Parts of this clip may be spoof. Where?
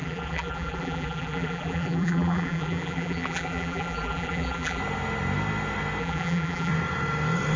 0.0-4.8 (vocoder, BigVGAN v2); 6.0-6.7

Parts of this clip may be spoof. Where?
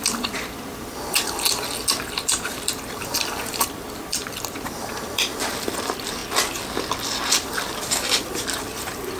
0.0-6.2 (vocoder, BigVGAN v2); 6.8-9.2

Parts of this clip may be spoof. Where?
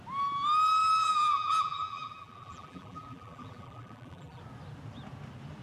1.0-4.4 (vocoder, BigVGAN v2)